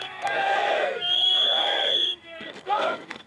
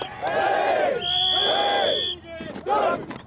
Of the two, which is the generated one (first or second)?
first